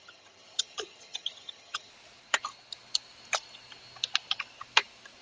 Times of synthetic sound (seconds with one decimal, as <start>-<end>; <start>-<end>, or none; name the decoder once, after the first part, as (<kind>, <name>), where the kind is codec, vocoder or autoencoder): 0.0-1.9 (vocoder, HiFi-GAN)